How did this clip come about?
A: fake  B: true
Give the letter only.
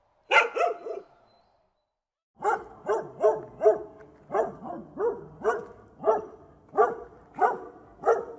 B